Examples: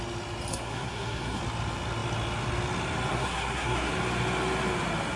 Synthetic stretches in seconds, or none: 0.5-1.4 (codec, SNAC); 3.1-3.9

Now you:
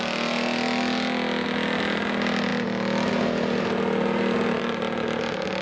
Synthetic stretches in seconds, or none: none